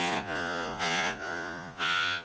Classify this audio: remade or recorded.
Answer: remade